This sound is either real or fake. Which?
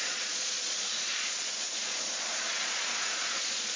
fake